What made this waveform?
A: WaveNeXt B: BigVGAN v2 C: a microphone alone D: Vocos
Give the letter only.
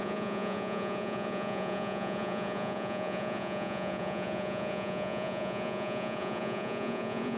D